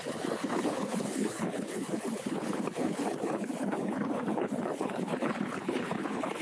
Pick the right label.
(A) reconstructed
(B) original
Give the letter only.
A